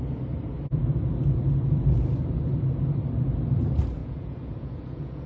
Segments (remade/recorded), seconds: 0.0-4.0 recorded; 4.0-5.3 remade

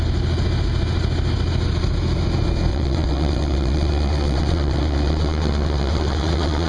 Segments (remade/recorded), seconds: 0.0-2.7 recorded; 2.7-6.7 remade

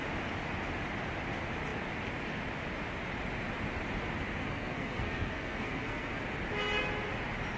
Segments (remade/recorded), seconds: 0.0-4.4 recorded; 4.4-6.2 remade; 6.2-7.6 recorded